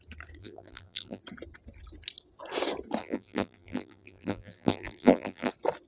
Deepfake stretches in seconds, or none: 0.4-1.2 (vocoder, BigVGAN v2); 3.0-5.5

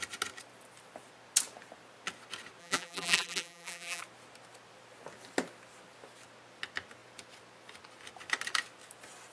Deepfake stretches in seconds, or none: 2.6-4.0 (vocoder, BigVGAN v2)

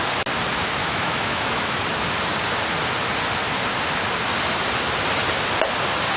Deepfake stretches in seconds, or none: 0.8-1.8 (autoencoder, DAC-VAE)

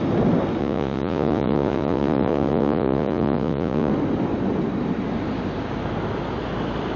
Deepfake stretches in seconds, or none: 0.6-3.9 (vocoder, Vocos)

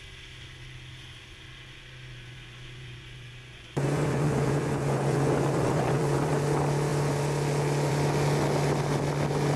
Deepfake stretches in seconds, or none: 2.1-6.3 (vocoder, Vocos)

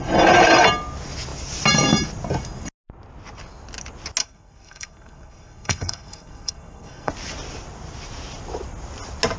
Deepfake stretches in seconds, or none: 4.2-7.1 (codec, SNAC)

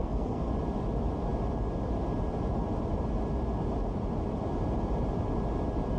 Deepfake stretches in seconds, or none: 0.0-0.5 (codec, SNAC)